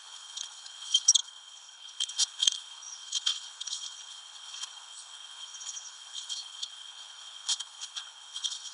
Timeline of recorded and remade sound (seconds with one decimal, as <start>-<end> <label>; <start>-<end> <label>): 0.0-8.7 remade